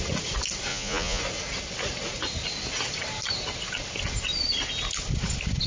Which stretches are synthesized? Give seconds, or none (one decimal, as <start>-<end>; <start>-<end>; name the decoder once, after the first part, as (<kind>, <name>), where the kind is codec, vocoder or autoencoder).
0.7-1.2 (vocoder, Vocos)